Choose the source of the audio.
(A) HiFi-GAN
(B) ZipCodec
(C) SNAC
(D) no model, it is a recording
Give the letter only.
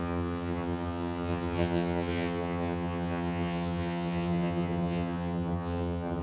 A